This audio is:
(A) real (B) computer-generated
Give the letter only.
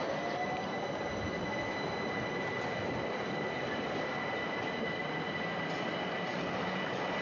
A